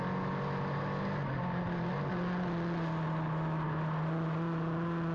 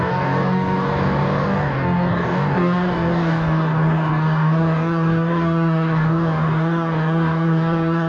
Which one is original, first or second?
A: first